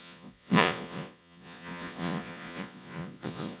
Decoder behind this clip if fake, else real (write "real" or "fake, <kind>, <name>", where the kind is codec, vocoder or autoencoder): fake, vocoder, Vocos